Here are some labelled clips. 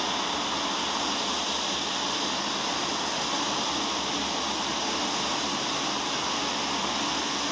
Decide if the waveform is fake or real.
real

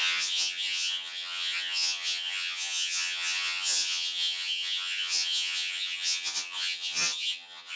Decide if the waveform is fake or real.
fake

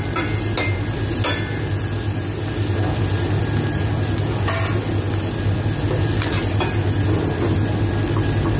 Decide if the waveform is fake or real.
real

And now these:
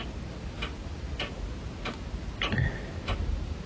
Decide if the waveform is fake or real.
real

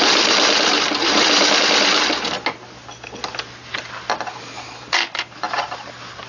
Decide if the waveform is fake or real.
real